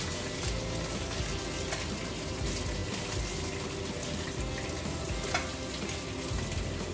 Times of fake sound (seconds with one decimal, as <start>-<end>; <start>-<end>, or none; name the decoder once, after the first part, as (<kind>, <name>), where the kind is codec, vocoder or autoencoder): none